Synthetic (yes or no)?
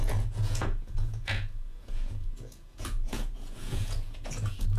yes